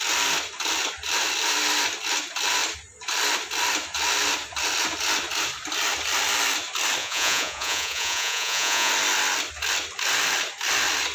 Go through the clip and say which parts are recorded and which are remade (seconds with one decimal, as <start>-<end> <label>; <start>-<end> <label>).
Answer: 0.0-7.0 recorded; 7.0-8.9 remade; 8.9-11.1 recorded